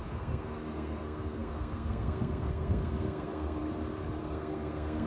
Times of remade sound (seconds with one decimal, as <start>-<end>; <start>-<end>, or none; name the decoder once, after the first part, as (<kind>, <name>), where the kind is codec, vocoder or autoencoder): 0.0-3.6 (codec, SNAC); 4.2-5.1